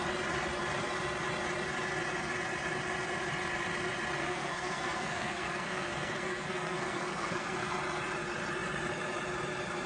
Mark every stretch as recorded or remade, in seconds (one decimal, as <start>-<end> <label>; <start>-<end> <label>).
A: 0.0-4.2 recorded; 4.2-7.7 remade; 7.7-9.9 recorded